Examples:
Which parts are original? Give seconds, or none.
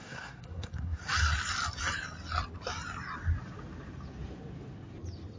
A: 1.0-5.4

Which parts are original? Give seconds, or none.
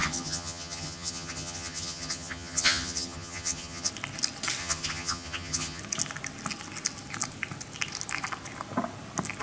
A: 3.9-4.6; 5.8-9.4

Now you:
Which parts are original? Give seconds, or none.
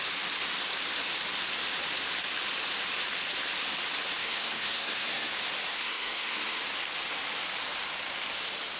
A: 0.0-4.2; 5.3-5.7; 6.6-8.8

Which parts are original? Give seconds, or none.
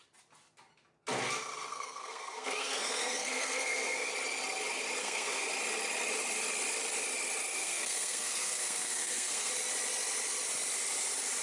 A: 0.0-1.7; 4.1-5.0; 5.5-7.6; 9.5-11.4